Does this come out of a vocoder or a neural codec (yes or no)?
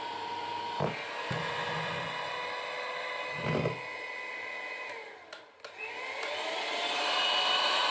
no